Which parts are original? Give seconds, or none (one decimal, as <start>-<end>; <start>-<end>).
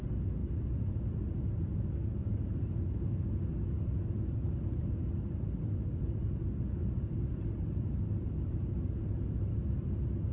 0.0-0.4; 1.0-6.8; 7.9-10.3